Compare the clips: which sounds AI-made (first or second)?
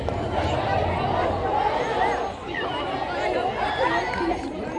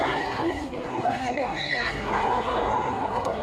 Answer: second